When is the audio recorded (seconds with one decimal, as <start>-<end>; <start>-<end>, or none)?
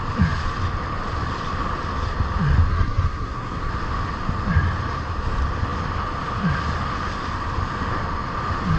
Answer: 0.0-2.7; 3.7-8.8